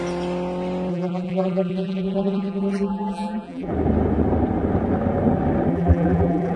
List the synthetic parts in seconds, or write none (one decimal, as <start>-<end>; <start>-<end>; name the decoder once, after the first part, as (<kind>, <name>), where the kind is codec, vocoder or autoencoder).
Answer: 0.9-3.7 (vocoder, BigVGAN v2); 5.7-6.6